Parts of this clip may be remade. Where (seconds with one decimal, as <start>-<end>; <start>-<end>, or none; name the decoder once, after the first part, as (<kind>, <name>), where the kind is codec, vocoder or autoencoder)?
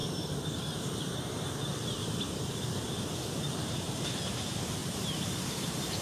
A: 0.0-1.3 (vocoder, BigVGAN v2); 2.0-2.5; 3.6-4.2; 4.8-6.0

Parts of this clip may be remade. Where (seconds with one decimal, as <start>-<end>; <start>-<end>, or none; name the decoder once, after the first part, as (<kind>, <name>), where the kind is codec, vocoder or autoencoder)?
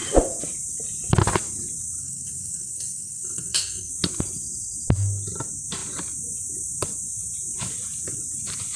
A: 2.0-3.9 (codec, SNAC)